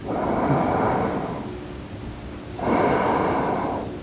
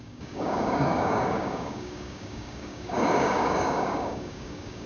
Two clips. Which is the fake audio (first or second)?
second